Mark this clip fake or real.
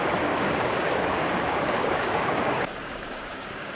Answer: fake